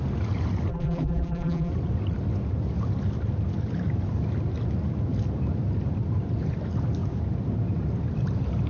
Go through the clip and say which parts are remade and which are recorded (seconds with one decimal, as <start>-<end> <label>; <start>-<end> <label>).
0.0-0.7 recorded; 0.7-1.7 remade; 1.7-8.7 recorded